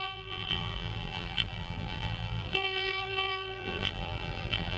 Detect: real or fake fake